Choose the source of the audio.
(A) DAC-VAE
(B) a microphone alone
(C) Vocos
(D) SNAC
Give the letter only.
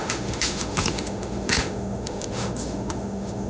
A